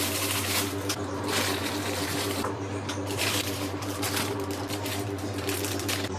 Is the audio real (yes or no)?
no